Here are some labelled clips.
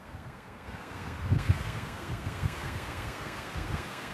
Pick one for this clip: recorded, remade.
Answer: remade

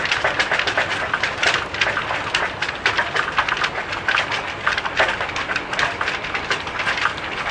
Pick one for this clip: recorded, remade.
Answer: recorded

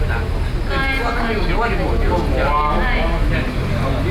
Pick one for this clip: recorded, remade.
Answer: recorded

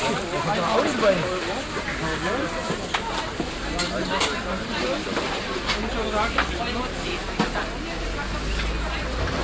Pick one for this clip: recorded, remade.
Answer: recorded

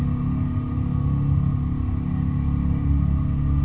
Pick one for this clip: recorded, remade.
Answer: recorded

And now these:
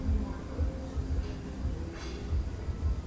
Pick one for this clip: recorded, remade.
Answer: recorded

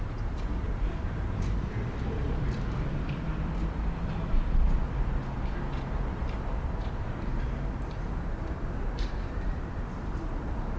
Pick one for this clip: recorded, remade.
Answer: remade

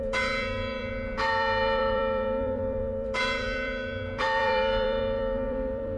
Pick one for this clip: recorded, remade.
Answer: remade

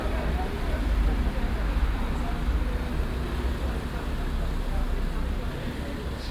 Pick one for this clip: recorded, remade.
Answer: recorded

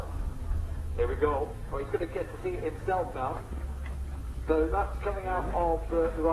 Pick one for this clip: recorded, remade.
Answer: remade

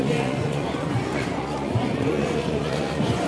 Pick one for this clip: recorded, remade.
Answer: remade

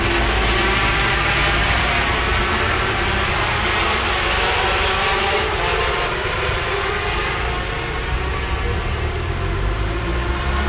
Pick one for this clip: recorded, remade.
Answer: recorded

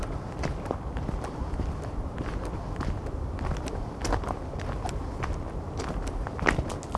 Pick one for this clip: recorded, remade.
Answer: recorded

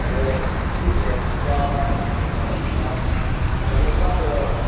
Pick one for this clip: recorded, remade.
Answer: recorded